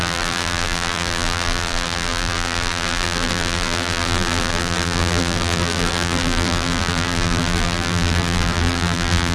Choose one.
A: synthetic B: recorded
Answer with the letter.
A